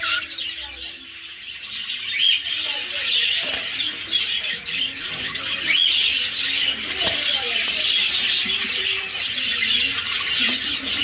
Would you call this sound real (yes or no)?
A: yes